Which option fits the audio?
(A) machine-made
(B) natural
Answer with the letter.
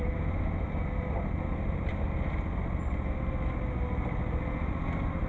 B